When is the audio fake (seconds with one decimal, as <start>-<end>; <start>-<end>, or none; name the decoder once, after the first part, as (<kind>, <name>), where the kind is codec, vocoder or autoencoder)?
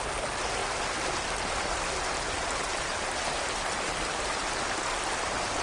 none